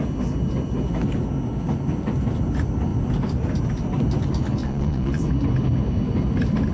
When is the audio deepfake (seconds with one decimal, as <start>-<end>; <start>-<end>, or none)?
4.6-5.2